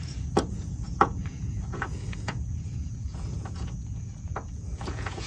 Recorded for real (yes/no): no